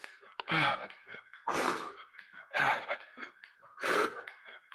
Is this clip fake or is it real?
fake